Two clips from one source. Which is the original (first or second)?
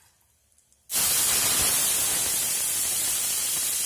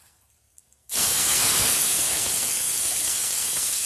first